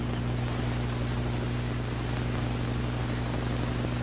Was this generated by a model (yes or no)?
no